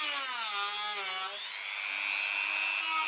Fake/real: real